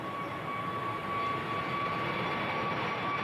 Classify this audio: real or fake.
real